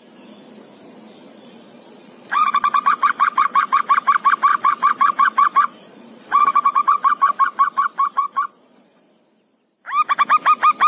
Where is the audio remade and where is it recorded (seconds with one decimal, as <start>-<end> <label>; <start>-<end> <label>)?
0.0-1.3 recorded; 1.3-3.8 remade; 3.8-4.5 recorded; 4.5-9.2 remade; 9.2-10.9 recorded